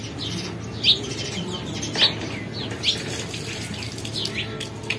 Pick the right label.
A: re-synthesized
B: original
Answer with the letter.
B